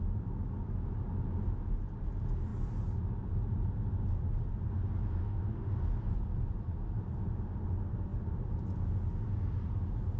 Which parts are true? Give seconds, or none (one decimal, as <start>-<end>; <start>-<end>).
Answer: 0.0-5.2; 5.7-10.2